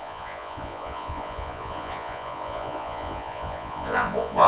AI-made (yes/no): yes